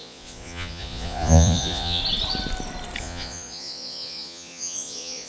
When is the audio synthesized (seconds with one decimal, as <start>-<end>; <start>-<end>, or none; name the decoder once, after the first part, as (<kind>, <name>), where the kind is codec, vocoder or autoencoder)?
0.0-2.0 (vocoder, Vocos); 3.0-5.3